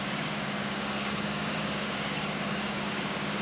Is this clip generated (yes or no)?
yes